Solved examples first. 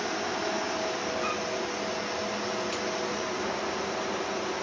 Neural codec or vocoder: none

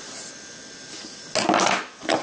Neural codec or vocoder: none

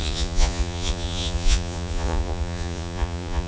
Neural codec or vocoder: vocoder, Vocos